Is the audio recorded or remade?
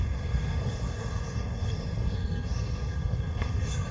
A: remade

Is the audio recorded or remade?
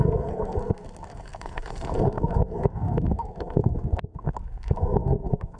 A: remade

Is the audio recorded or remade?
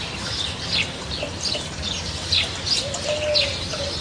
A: recorded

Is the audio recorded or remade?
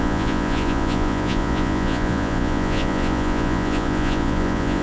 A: remade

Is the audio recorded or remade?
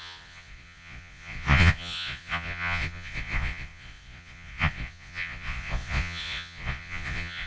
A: remade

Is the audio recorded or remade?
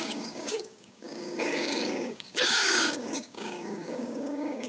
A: remade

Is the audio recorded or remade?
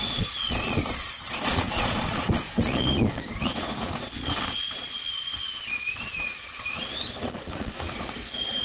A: remade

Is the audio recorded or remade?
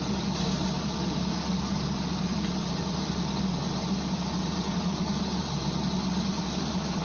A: remade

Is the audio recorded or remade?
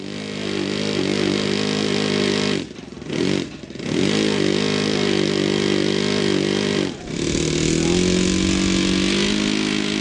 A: recorded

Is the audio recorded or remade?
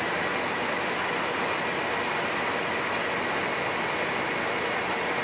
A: recorded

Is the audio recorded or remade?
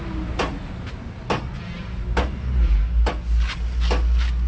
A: recorded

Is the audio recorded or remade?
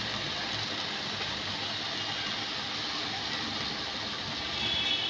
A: recorded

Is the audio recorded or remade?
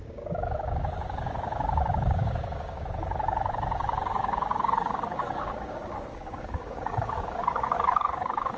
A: remade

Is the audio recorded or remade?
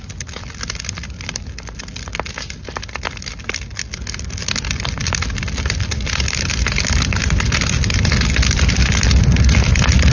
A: recorded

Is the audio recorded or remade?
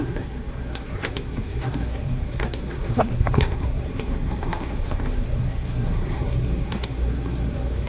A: remade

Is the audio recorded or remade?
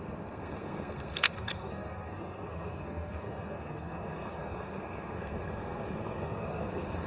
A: remade